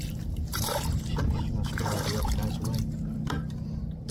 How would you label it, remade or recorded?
remade